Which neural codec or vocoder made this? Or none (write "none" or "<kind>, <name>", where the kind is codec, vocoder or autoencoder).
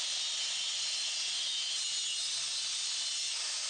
none